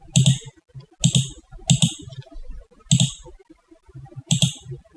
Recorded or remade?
recorded